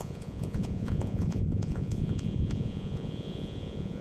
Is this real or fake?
fake